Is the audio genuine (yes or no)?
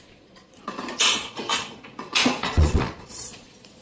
no